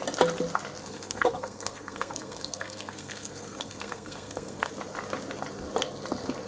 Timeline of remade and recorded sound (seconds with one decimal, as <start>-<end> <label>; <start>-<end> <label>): 0.0-0.8 recorded; 0.8-4.7 remade; 4.7-6.5 recorded